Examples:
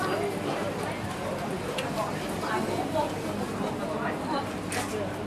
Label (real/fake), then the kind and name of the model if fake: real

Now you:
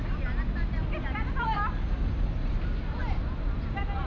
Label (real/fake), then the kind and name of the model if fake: real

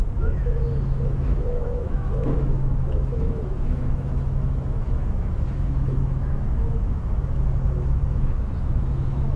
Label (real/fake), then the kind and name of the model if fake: fake, autoencoder, DAC-VAE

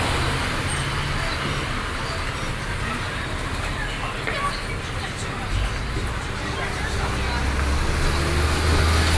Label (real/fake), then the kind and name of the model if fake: real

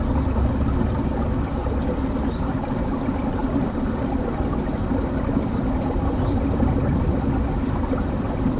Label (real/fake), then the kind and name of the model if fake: real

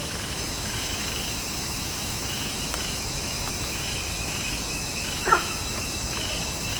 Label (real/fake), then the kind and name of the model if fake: fake, autoencoder, DAC-VAE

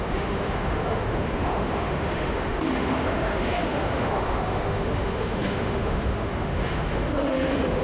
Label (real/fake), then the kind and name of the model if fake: fake, autoencoder, DAC-VAE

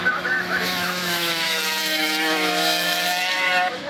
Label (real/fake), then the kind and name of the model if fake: fake, autoencoder, DAC-VAE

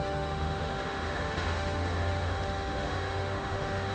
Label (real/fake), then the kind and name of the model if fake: fake, autoencoder, DAC-VAE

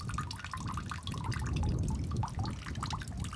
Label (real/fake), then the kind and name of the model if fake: real